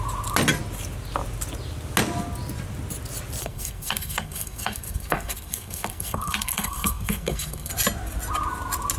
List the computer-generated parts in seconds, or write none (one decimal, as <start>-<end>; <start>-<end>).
3.4-7.7